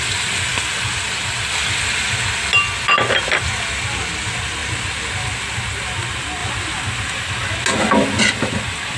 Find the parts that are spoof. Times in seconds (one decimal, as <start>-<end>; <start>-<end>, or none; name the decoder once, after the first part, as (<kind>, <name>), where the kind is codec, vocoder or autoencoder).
none